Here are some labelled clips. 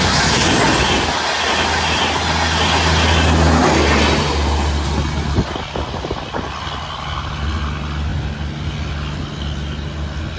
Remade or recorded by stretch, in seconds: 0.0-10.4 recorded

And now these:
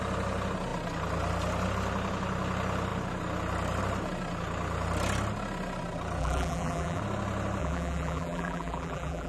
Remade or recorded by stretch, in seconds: 0.0-6.2 recorded; 6.2-7.0 remade; 7.0-7.6 recorded; 7.6-9.3 remade

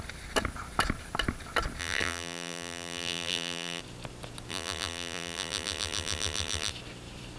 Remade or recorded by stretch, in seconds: 0.0-1.8 recorded; 1.8-3.8 remade; 3.8-4.5 recorded; 4.5-6.7 remade; 6.7-7.4 recorded